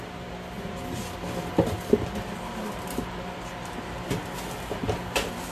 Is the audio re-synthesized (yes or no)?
no